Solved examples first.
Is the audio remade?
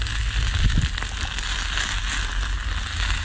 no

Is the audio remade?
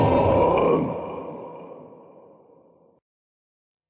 yes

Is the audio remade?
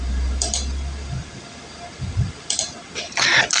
no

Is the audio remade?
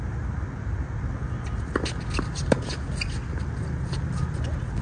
no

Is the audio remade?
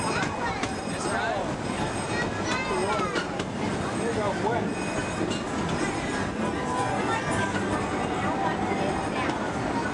no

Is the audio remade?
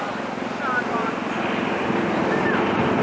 no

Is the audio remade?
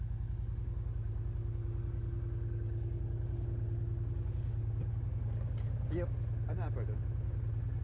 no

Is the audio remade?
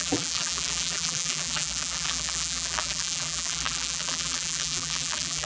yes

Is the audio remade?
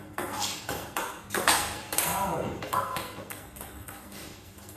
yes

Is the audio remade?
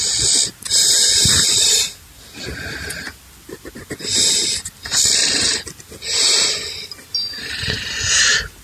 no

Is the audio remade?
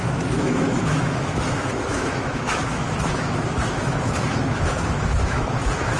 yes